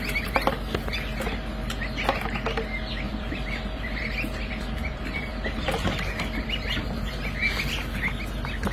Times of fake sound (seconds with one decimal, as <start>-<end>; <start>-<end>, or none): 3.1-7.1